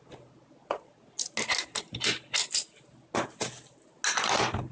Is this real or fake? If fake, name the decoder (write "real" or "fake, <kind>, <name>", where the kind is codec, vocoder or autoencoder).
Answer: real